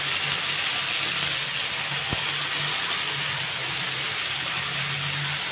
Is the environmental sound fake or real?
real